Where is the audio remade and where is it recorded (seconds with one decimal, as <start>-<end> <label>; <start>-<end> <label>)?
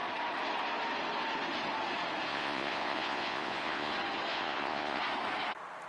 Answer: 0.0-2.3 recorded; 2.3-3.9 remade; 3.9-4.3 recorded; 4.3-5.0 remade; 5.0-5.9 recorded